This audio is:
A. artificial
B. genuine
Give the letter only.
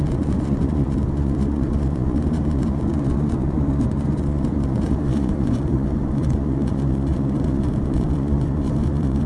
A